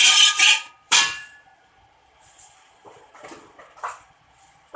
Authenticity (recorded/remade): remade